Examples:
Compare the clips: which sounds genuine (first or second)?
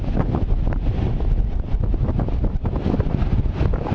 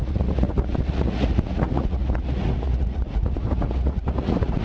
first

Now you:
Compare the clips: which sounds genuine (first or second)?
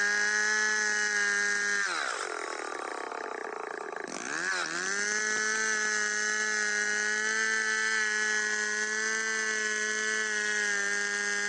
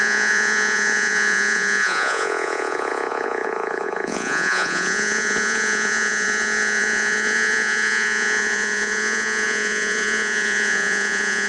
first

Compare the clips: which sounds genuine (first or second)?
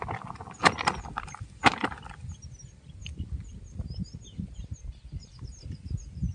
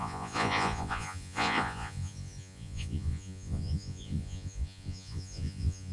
first